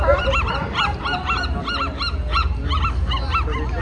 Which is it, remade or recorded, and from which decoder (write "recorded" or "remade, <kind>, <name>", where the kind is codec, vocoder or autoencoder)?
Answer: recorded